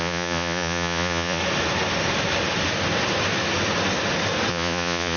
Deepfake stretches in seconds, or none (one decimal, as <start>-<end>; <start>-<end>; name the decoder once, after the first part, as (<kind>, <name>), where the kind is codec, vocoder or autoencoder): 0.0-1.4 (vocoder, Vocos); 4.5-5.2